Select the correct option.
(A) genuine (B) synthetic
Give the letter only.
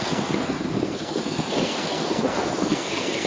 B